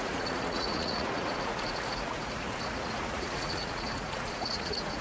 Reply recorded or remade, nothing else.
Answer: remade